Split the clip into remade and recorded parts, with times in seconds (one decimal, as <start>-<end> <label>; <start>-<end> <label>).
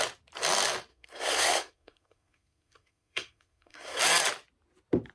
0.0-0.9 recorded; 0.9-4.0 remade; 4.0-5.1 recorded